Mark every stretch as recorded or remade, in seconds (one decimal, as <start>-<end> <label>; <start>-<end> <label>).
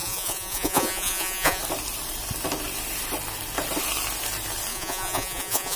0.0-1.6 remade; 1.6-4.7 recorded; 4.7-5.8 remade